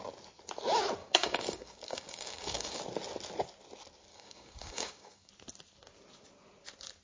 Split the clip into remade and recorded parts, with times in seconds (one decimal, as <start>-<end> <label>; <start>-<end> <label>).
0.0-1.0 recorded; 1.0-2.8 remade; 2.8-4.1 recorded; 4.1-5.3 remade; 5.3-7.0 recorded